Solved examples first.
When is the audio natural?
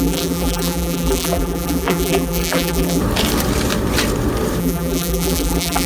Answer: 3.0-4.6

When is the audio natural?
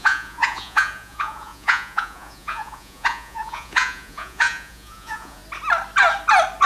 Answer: 5.4-6.7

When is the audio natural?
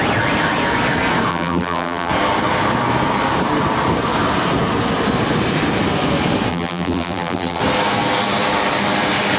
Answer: 0.0-1.3; 2.1-6.5; 7.6-9.4